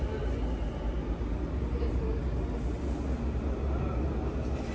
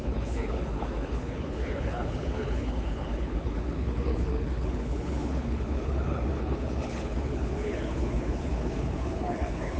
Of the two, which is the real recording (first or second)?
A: first